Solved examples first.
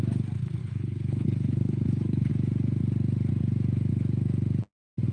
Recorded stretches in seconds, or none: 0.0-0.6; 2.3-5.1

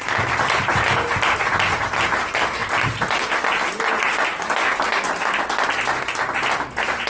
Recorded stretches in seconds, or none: 0.0-7.1

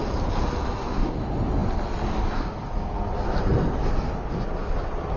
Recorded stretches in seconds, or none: 0.0-5.2

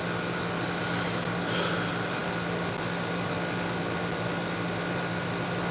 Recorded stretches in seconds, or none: 0.0-5.7

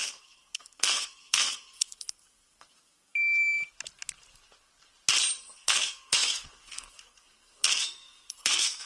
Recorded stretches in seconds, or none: 3.2-5.4

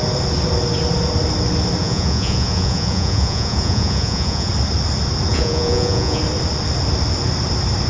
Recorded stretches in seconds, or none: 0.0-1.8; 4.5-5.3; 6.2-7.9

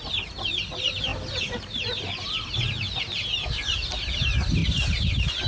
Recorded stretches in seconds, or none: 0.0-5.5

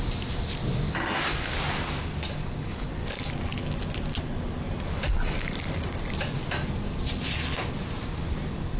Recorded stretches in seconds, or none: 0.0-8.8